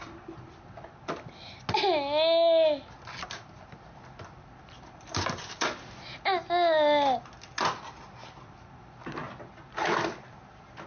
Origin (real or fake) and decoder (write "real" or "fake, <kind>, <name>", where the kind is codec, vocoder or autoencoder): real